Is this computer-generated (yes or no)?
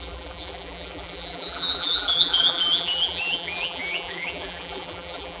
yes